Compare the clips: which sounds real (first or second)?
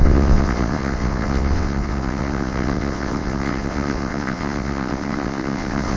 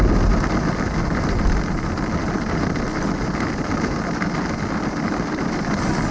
second